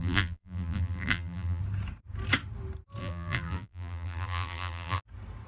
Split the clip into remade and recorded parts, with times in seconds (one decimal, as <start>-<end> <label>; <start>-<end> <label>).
0.0-1.6 remade; 1.6-3.0 recorded; 3.0-5.0 remade; 5.0-5.5 recorded